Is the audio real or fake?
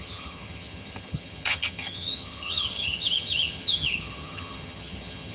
fake